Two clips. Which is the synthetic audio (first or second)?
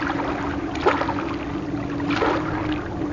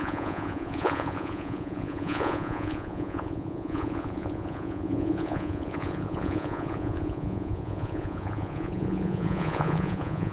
second